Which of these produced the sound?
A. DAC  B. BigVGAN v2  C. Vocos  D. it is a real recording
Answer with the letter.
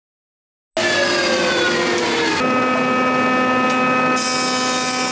D